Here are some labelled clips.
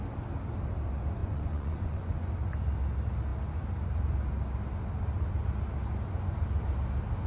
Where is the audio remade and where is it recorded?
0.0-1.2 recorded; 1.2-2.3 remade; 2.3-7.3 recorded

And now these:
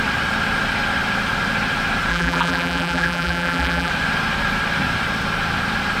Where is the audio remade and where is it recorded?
0.0-2.1 recorded; 2.1-3.9 remade; 3.9-6.0 recorded

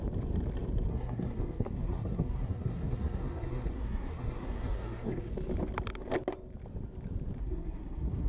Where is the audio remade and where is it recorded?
0.0-0.9 recorded; 0.9-5.3 remade; 5.3-7.4 recorded; 7.4-8.3 remade

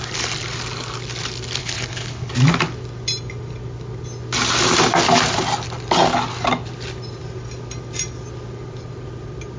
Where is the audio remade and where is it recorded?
0.0-1.6 recorded; 1.6-2.3 remade; 2.3-9.6 recorded